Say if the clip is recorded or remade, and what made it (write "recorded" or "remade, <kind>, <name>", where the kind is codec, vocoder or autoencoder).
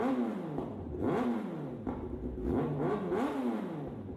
recorded